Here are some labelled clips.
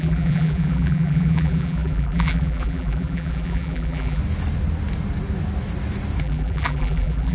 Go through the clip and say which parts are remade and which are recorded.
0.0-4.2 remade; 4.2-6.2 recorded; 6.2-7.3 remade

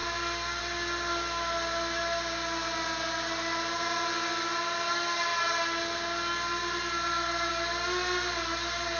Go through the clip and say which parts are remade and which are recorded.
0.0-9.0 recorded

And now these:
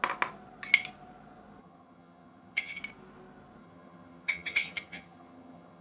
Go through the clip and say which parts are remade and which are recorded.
0.0-1.6 recorded; 1.6-2.8 remade; 2.8-3.6 recorded; 3.6-5.8 remade

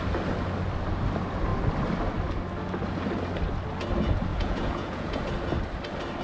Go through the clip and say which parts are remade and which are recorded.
0.0-4.3 recorded; 4.3-5.2 remade; 5.2-6.2 recorded

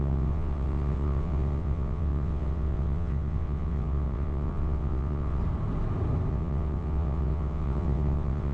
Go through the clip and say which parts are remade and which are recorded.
0.0-5.4 remade; 5.4-6.3 recorded; 6.3-8.5 remade

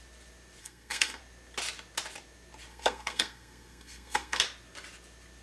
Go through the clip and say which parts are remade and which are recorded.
0.0-0.6 recorded; 0.6-1.2 remade; 1.2-2.7 recorded; 2.7-4.4 remade; 4.4-5.4 recorded

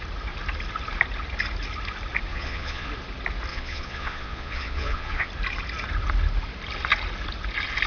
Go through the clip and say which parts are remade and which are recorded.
0.0-2.3 recorded; 2.3-2.9 remade; 2.9-3.5 recorded; 3.5-5.3 remade; 5.3-7.9 recorded

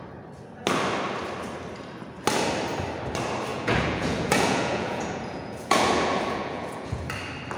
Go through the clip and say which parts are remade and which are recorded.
0.0-3.5 recorded; 3.5-7.0 remade; 7.0-7.6 recorded